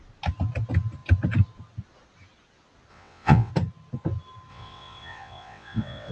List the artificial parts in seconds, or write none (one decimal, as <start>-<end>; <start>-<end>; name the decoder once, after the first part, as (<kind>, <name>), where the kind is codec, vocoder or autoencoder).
2.9-3.5 (vocoder, WaveNeXt); 4.5-6.1